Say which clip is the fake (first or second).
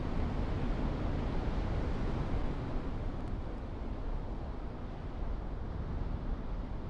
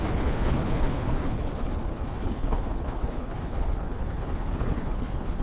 second